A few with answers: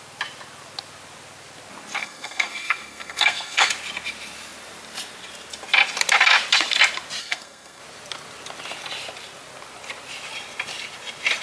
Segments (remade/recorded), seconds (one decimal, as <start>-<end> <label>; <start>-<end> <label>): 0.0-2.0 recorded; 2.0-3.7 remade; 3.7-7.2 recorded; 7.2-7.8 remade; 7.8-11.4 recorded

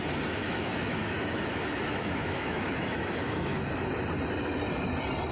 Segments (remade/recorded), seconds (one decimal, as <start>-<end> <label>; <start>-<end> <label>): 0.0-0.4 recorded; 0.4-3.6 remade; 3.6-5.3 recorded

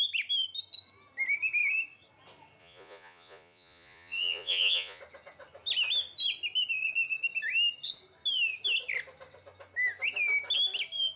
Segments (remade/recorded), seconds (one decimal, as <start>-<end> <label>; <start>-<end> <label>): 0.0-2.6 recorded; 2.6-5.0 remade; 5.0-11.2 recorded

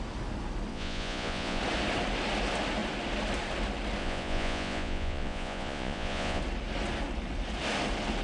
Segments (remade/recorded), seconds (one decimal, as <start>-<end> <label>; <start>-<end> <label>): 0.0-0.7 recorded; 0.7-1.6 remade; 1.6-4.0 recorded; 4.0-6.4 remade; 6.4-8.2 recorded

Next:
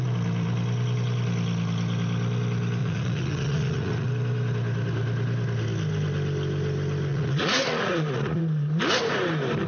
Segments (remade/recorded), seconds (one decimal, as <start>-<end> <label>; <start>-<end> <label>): 0.0-2.8 recorded; 2.8-4.1 remade; 4.1-7.1 recorded; 7.1-8.4 remade; 8.4-9.7 recorded

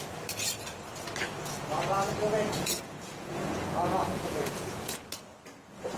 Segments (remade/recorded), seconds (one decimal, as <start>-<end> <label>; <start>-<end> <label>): 0.0-2.2 recorded; 2.2-4.9 remade; 4.9-6.0 recorded

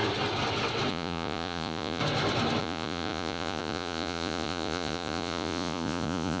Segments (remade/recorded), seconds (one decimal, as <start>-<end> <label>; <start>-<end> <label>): 0.0-0.9 recorded; 0.9-2.0 remade; 2.0-2.6 recorded; 2.6-6.4 remade